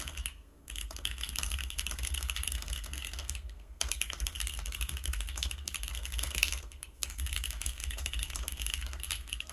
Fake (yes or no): yes